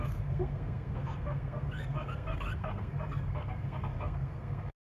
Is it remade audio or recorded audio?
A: remade